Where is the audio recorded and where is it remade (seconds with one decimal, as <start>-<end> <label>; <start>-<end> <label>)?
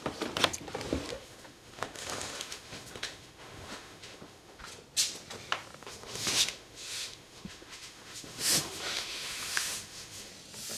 0.0-1.1 recorded; 1.1-4.6 remade; 4.6-5.8 recorded; 5.8-10.3 remade; 10.3-10.8 recorded